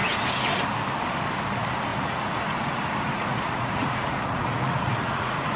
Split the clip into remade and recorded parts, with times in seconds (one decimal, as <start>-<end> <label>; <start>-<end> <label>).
0.0-1.9 recorded; 1.9-5.6 remade